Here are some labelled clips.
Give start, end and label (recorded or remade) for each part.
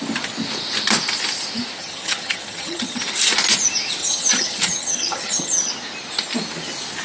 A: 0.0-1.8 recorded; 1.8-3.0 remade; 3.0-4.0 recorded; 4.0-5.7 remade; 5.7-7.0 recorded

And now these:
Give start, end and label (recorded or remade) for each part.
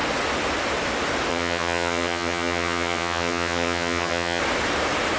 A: 0.0-1.3 recorded; 1.3-4.4 remade; 4.4-5.2 recorded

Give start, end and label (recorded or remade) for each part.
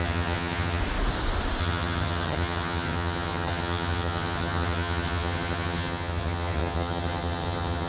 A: 0.0-0.8 remade; 0.8-1.6 recorded; 1.6-7.9 remade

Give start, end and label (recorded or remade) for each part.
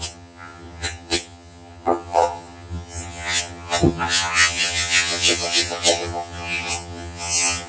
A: 0.0-7.7 remade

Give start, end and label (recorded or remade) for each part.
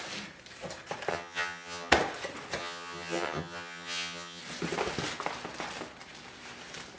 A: 0.0-1.1 recorded; 1.1-1.9 remade; 1.9-2.6 recorded; 2.6-4.4 remade; 4.4-7.0 recorded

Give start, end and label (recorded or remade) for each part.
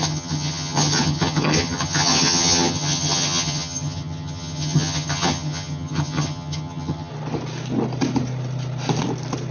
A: 0.0-7.1 remade; 7.1-9.5 recorded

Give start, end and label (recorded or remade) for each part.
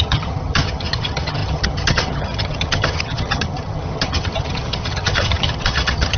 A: 0.0-6.2 remade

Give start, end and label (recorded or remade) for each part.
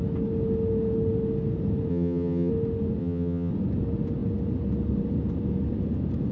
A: 0.0-1.9 recorded; 1.9-2.5 remade; 2.5-3.0 recorded; 3.0-3.5 remade; 3.5-6.3 recorded